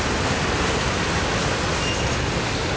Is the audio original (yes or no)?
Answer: yes